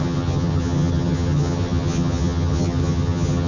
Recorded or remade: remade